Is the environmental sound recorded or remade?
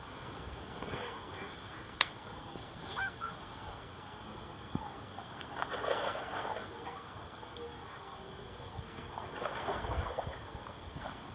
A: remade